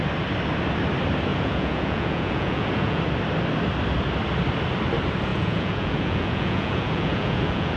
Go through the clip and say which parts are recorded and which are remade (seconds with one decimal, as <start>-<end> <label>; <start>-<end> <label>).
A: 0.0-1.3 recorded; 1.3-3.0 remade; 3.0-5.3 recorded; 5.3-7.8 remade